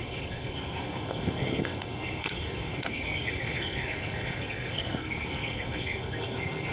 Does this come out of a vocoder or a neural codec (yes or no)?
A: yes